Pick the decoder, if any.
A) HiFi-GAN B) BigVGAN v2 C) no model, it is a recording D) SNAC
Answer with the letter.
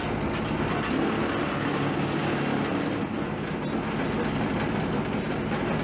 C